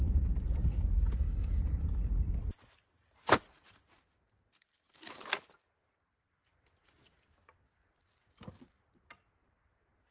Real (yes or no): yes